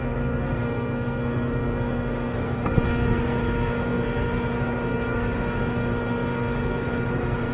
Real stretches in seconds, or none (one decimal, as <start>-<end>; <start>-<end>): none